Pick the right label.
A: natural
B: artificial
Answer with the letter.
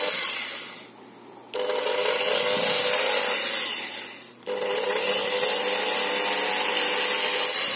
A